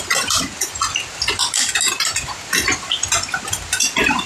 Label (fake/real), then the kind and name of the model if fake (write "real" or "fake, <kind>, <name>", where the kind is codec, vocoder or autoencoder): real